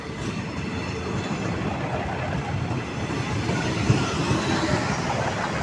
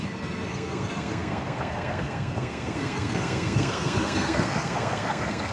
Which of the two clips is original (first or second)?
first